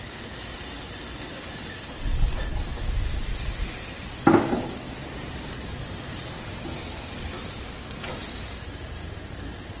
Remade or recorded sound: recorded